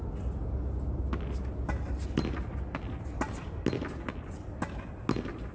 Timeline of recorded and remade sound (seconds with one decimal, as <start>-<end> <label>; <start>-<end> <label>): 0.0-5.5 recorded